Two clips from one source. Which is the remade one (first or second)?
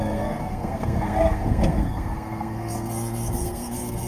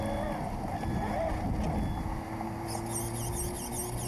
first